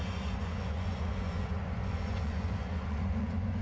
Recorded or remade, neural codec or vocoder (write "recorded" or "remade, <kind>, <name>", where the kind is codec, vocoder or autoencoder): remade, vocoder, Vocos